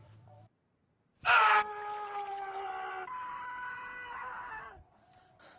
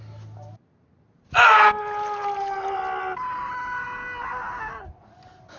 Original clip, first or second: second